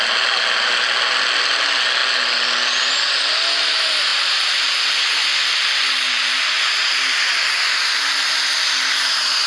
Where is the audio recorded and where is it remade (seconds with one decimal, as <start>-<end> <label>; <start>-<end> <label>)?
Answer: 0.0-9.5 recorded

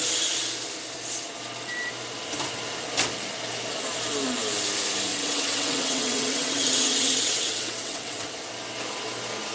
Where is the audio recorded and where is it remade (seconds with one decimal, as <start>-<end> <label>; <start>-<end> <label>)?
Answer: 0.0-5.1 recorded; 5.1-8.3 remade; 8.3-9.5 recorded

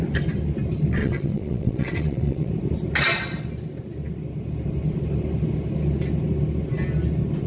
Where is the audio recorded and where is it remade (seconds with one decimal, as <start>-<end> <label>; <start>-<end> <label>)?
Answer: 0.0-1.0 recorded; 1.0-2.5 remade; 2.5-7.5 recorded

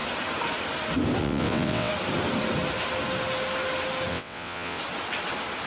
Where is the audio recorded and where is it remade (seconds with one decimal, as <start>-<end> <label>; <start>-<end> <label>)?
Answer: 0.0-1.2 recorded; 1.2-1.9 remade; 1.9-4.1 recorded; 4.1-4.8 remade; 4.8-5.7 recorded

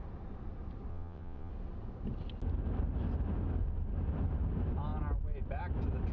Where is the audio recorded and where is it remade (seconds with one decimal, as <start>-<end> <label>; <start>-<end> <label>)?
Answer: 0.0-0.9 recorded; 0.9-1.5 remade; 1.5-6.1 recorded

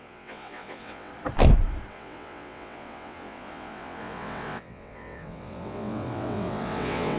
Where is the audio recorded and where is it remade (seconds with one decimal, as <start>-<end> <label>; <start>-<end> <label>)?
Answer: 0.0-1.1 remade; 1.1-1.9 recorded; 1.9-7.2 remade

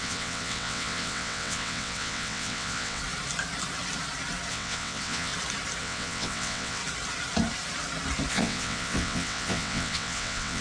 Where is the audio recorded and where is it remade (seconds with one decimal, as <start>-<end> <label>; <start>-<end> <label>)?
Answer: 0.0-3.0 remade; 3.0-4.5 recorded; 4.5-5.3 remade; 5.3-5.8 recorded; 5.8-6.8 remade; 6.8-8.3 recorded; 8.3-10.6 remade

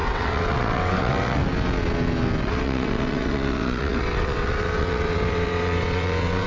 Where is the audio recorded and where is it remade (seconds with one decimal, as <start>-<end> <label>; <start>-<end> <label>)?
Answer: 0.0-1.4 remade; 1.4-2.4 recorded; 2.4-6.5 remade